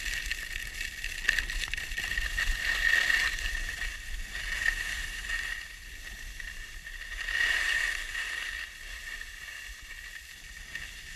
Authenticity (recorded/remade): recorded